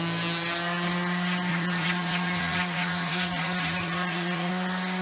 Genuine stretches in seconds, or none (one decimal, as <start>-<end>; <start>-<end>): 0.0-1.5; 4.5-5.0

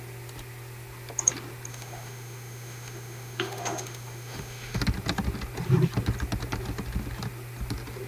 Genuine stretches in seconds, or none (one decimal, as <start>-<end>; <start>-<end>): 0.0-1.7; 4.8-8.1

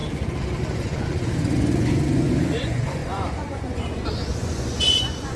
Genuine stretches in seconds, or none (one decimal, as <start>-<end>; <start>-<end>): 0.0-0.6

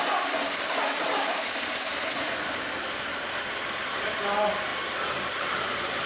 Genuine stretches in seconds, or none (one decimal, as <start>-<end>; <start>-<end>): 0.0-6.1

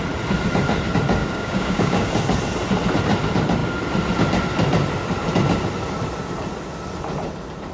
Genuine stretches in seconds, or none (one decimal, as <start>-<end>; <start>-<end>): 0.0-1.2; 2.1-7.7

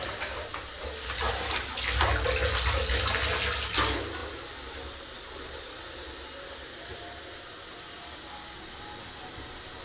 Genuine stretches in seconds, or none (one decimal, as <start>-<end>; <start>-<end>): 0.0-9.8

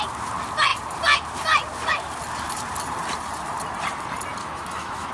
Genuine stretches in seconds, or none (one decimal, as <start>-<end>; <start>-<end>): 0.0-4.4